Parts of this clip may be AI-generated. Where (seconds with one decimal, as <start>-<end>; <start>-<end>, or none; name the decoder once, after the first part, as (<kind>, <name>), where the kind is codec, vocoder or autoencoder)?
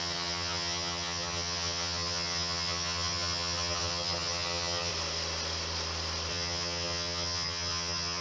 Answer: 0.0-4.9 (vocoder, HiFi-GAN); 6.3-8.2